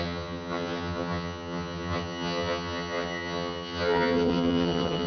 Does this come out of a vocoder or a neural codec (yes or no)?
yes